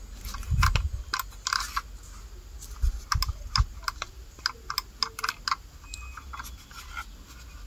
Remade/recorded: recorded